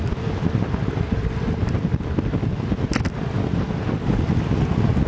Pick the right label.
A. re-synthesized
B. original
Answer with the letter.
B